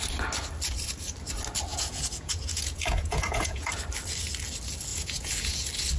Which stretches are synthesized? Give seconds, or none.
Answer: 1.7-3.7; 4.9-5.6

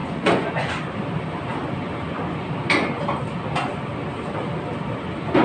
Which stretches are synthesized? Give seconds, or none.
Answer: 0.0-0.8